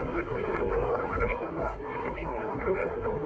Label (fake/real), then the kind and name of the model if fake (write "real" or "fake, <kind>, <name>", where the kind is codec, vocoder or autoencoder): fake, codec, SNAC